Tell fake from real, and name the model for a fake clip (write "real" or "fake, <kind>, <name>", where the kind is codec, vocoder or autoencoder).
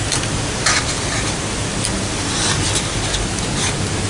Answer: real